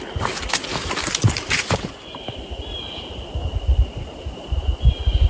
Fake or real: fake